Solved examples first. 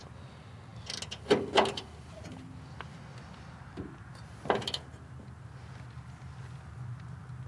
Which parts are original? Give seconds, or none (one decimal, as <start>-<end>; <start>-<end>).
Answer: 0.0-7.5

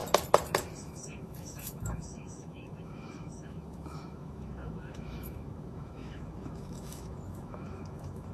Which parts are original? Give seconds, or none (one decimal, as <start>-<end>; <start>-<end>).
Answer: 0.0-0.8

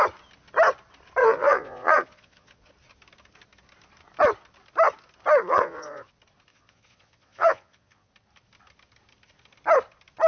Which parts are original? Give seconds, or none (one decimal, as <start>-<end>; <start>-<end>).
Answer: 0.0-1.2; 2.7-5.5; 6.1-6.5; 8.1-10.3

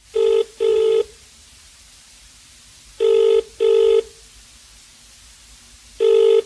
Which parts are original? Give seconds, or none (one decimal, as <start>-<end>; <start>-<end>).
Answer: 0.0-0.7; 2.4-6.5

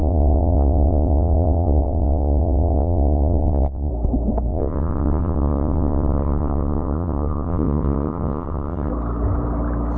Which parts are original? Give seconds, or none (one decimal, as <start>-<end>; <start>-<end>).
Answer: 3.9-4.5; 8.9-10.0